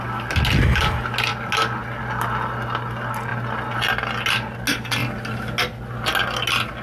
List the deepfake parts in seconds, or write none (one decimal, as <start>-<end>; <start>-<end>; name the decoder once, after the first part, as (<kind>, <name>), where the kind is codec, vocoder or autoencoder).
none